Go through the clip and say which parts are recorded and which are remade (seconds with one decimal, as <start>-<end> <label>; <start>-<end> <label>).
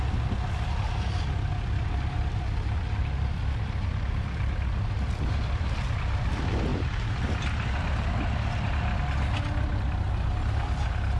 0.0-6.7 recorded; 6.7-7.3 remade; 7.3-11.2 recorded